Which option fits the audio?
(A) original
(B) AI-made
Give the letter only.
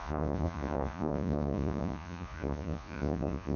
B